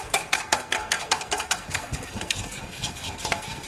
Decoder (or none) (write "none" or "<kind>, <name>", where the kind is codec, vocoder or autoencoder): codec, SNAC